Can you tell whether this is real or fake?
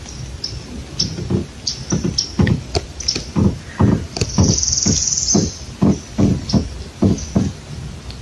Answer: real